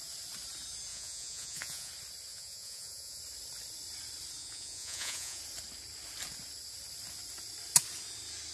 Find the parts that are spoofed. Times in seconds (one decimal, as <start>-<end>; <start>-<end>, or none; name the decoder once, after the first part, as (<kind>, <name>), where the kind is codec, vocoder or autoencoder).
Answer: 0.9-1.9 (vocoder, Vocos); 2.3-3.2; 4.4-5.4